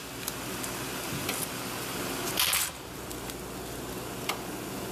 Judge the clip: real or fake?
real